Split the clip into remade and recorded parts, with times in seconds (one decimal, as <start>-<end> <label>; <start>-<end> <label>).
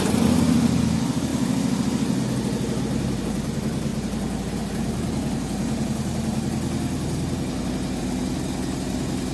0.0-9.3 recorded